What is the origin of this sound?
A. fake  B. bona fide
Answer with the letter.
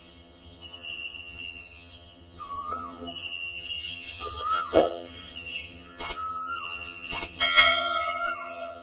A